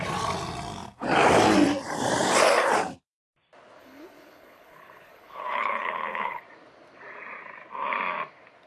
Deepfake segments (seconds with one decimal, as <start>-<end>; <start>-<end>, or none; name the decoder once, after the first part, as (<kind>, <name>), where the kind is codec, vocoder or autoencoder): 3.8-6.4 (codec, HILCodec)